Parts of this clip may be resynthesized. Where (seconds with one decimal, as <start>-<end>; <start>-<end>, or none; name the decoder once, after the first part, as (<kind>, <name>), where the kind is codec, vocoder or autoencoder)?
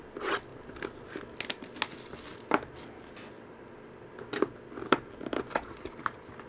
none